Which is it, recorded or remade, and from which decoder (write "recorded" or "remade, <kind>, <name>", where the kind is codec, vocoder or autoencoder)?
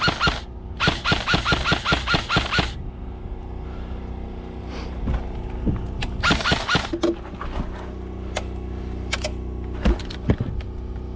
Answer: recorded